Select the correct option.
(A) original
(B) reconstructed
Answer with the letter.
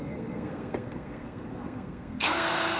B